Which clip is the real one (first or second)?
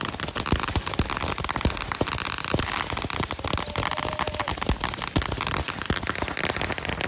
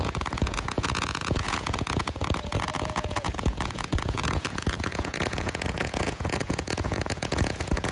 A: first